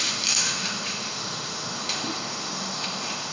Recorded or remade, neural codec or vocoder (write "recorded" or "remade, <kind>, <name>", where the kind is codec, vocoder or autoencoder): remade, autoencoder, DAC-VAE